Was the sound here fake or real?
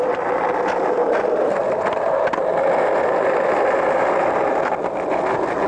real